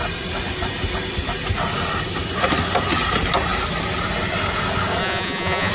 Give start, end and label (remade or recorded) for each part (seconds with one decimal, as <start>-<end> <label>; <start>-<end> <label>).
0.0-5.0 recorded; 5.0-5.7 remade

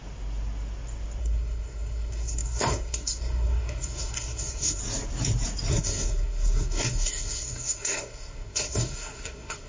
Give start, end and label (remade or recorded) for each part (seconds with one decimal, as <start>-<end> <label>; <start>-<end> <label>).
0.0-1.2 recorded; 1.2-4.8 remade; 4.8-5.7 recorded; 5.7-9.7 remade

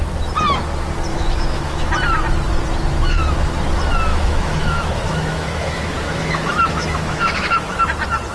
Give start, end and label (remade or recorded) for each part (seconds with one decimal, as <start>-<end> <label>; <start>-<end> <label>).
0.0-1.1 recorded; 1.1-1.9 remade; 1.9-4.1 recorded; 4.1-7.8 remade; 7.8-8.3 recorded

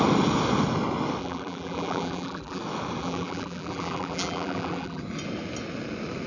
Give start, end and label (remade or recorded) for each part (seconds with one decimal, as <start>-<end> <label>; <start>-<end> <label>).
0.0-1.2 recorded; 1.2-2.6 remade; 2.6-3.0 recorded; 3.0-5.0 remade; 5.0-6.3 recorded

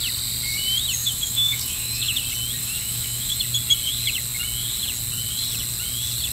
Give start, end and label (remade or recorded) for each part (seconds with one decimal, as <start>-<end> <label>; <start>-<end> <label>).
0.0-1.0 recorded; 1.0-2.2 remade; 2.2-2.6 recorded; 2.6-3.4 remade; 3.4-6.3 recorded